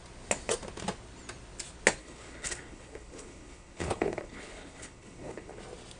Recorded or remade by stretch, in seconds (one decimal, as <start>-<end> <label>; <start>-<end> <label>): 0.0-2.0 recorded; 2.0-5.6 remade; 5.6-6.0 recorded